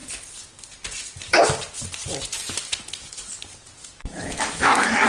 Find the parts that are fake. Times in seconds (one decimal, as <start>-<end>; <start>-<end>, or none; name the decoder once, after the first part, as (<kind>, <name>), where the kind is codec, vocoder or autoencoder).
3.8-5.1 (autoencoder, DAC-VAE)